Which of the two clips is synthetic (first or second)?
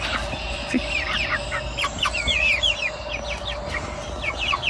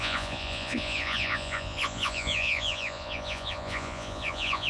second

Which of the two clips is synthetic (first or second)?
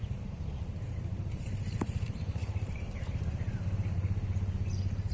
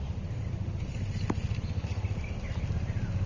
first